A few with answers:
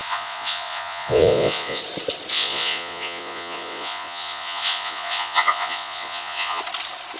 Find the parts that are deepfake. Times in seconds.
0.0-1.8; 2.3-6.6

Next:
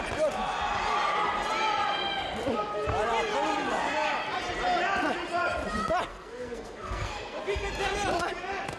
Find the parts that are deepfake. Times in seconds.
6.1-7.4

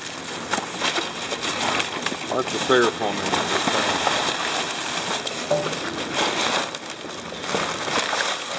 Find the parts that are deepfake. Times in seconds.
none

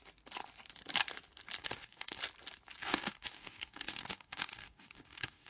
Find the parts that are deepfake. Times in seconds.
1.6-2.2; 2.8-5.5

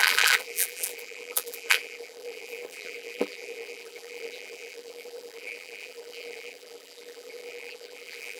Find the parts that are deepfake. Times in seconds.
0.0-8.4

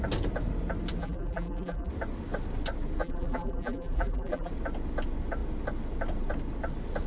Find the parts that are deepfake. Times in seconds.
1.0-1.9; 3.0-4.5

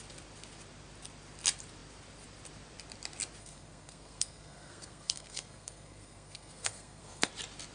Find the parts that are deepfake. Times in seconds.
3.4-7.3